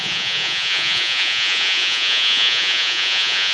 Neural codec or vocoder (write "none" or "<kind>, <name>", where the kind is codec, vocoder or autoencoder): vocoder, Vocos